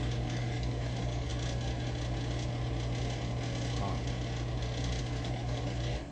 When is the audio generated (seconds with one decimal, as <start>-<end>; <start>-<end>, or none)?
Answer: 0.0-1.3; 5.0-6.1